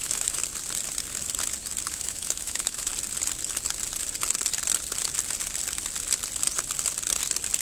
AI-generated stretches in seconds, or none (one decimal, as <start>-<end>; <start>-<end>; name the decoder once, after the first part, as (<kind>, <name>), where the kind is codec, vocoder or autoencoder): 0.0-0.4 (autoencoder, DAC-VAE); 1.9-2.9